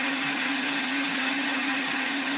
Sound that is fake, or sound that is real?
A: fake